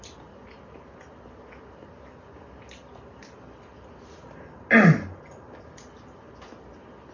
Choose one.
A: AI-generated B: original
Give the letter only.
B